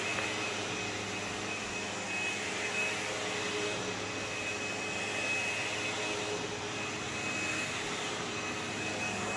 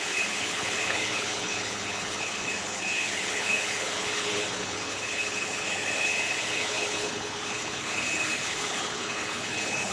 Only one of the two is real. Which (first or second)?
first